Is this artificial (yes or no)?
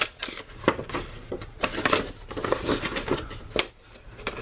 yes